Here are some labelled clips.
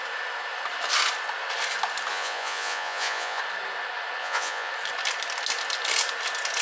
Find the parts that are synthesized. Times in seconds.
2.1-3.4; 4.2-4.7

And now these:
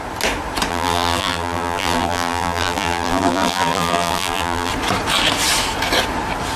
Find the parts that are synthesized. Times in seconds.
0.7-4.7

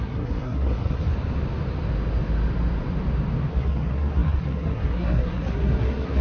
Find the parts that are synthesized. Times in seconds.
0.0-1.1; 3.5-6.2

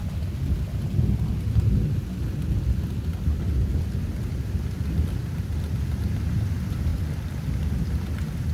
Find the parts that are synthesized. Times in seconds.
none

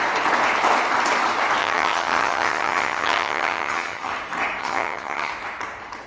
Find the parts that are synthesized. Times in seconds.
1.6-4.1; 4.6-5.3

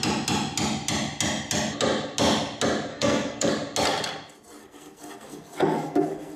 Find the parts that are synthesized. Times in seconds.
2.9-3.5; 4.6-6.4

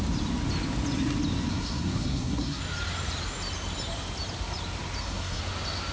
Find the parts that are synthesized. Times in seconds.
1.5-2.6; 5.0-5.5